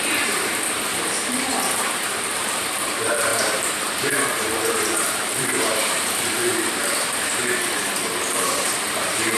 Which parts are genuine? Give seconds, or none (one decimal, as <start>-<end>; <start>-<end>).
none